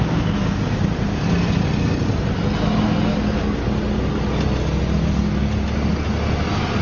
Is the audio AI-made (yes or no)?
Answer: no